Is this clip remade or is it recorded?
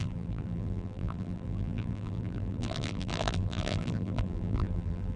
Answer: remade